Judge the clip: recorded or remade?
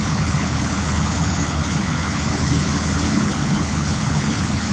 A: remade